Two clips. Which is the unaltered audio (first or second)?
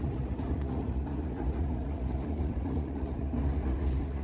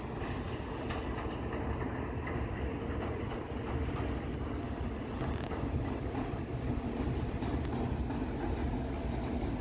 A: second